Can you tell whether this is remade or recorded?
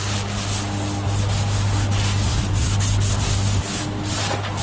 recorded